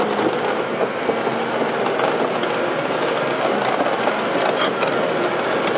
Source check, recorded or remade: recorded